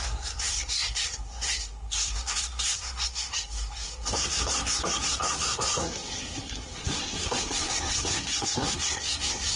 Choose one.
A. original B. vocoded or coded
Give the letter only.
B